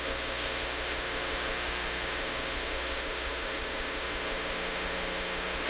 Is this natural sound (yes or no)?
no